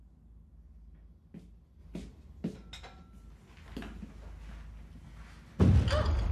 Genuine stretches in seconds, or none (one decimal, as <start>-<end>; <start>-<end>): 0.0-6.3